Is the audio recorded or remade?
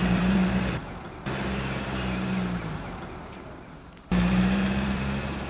remade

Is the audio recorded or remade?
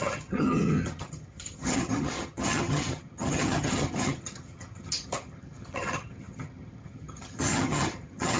remade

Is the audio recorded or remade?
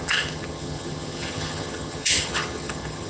remade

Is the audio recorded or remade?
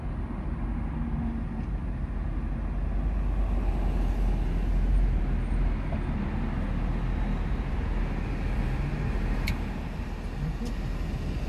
recorded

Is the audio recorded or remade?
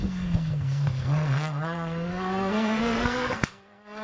remade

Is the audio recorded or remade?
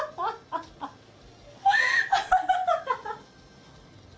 recorded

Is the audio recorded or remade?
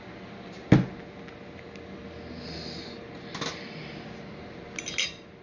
recorded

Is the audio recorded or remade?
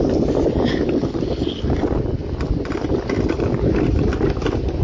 recorded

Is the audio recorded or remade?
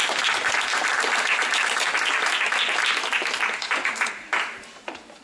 recorded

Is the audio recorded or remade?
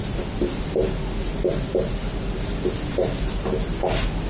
recorded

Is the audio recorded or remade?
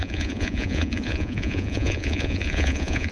remade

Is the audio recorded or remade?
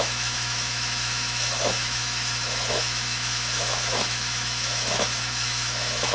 remade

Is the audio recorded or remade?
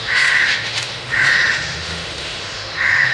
remade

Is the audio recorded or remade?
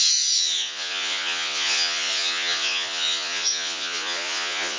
remade